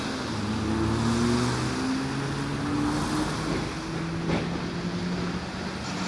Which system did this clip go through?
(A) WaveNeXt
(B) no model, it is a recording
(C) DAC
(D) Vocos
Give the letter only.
B